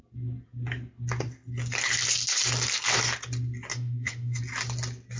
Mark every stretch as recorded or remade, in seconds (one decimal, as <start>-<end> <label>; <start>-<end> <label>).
0.0-3.7 recorded; 3.7-4.4 remade; 4.4-5.2 recorded